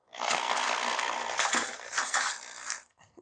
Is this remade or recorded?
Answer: remade